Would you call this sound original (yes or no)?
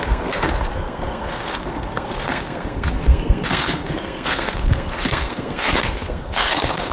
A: no